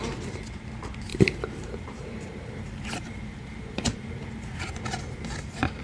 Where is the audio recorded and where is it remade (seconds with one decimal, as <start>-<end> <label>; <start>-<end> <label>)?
0.0-1.1 recorded; 1.1-4.6 remade; 4.6-5.8 recorded